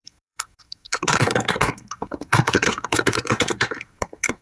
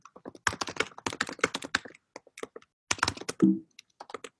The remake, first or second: first